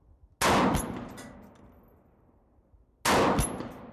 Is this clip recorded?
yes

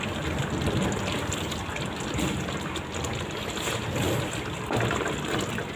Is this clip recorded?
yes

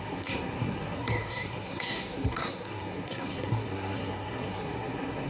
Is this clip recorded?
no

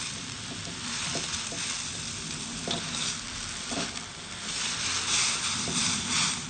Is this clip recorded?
no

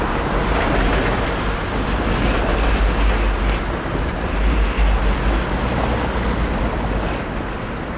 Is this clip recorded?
yes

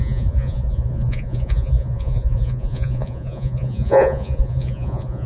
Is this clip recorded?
no